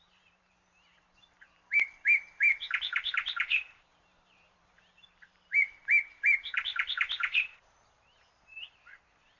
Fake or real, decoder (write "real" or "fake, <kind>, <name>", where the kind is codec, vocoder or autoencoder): fake, vocoder, BigVGAN v2